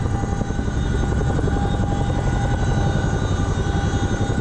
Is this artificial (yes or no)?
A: no